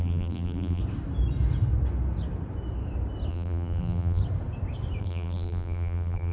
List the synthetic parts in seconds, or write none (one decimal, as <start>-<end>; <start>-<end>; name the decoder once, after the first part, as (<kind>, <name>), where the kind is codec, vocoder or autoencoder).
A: 0.0-0.8 (vocoder, BigVGAN v2); 3.3-4.2; 5.0-6.3